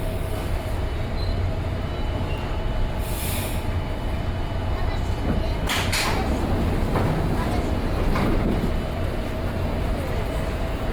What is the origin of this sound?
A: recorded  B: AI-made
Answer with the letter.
A